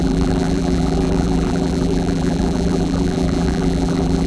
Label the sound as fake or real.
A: fake